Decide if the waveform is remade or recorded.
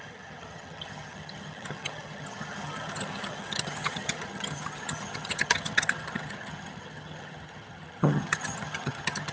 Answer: remade